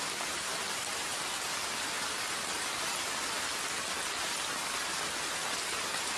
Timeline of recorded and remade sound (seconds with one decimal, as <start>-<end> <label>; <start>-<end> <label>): 0.0-6.2 recorded